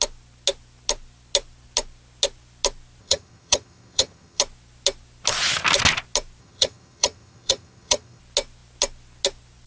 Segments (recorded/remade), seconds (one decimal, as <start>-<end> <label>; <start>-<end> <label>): 0.0-3.0 recorded; 3.0-4.4 remade; 4.4-6.4 recorded; 6.4-8.2 remade; 8.2-9.7 recorded